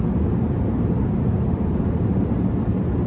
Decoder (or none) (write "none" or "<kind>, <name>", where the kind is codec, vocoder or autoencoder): none